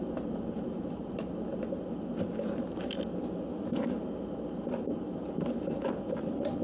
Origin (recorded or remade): recorded